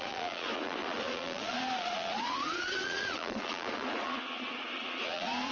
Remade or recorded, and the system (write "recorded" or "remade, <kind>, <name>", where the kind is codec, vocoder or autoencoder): remade, vocoder, Vocos